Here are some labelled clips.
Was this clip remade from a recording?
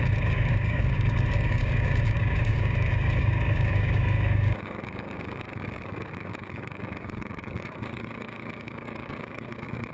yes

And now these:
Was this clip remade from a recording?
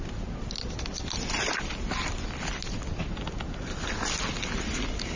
no